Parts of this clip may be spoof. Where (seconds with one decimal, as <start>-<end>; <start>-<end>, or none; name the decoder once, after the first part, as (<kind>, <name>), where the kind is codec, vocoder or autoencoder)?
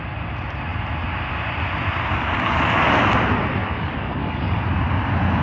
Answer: 2.1-2.9 (codec, DAC); 3.6-4.6